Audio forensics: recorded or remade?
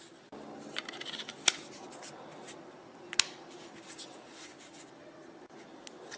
recorded